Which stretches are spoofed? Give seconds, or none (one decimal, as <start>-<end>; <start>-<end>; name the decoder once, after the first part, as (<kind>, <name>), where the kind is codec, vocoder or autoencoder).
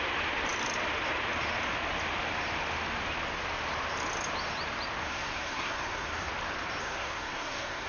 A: 5.0-6.3 (codec, SNAC); 6.8-7.9